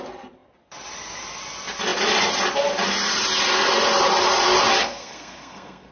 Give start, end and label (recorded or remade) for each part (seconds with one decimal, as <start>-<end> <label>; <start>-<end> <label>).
0.0-4.8 recorded; 4.8-5.9 remade